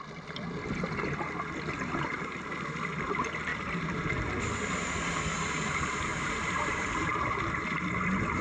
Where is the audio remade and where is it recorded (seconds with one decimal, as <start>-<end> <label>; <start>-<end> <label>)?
0.0-3.5 recorded; 3.5-4.4 remade; 4.4-6.1 recorded; 6.1-7.8 remade; 7.8-8.4 recorded